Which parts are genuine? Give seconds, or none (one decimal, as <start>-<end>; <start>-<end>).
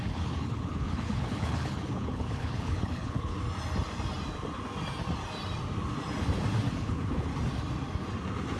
3.4-6.7; 7.3-8.6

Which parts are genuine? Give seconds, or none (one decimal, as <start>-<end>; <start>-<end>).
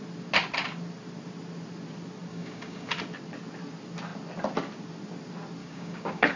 0.0-2.3; 2.9-5.6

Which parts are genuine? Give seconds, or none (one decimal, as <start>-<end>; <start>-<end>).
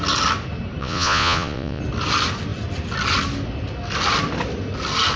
0.0-0.8; 1.8-5.2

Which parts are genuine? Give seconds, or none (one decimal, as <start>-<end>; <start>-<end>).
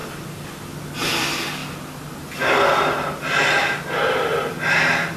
0.0-5.2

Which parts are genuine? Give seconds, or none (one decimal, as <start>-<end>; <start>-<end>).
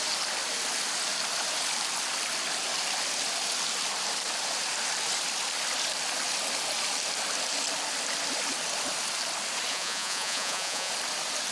0.0-9.7; 10.9-11.5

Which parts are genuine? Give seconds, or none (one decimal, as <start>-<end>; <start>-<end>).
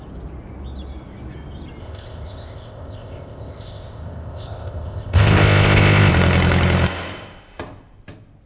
0.0-1.8; 6.1-8.5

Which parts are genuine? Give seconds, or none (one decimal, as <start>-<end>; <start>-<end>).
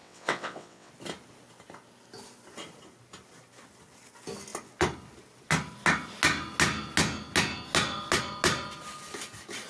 0.9-9.7